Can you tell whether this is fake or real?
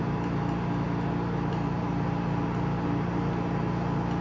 real